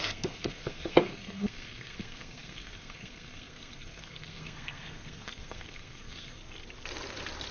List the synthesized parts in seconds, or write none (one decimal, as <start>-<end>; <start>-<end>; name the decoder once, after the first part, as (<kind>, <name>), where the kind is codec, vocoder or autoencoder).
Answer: 0.0-6.4 (codec, SNAC)